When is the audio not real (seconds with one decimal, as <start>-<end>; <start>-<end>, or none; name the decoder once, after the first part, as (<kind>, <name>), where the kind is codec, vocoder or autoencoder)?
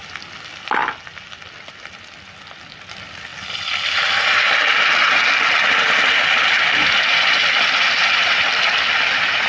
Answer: none